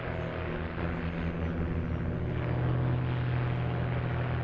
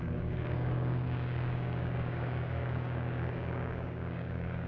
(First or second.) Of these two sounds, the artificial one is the second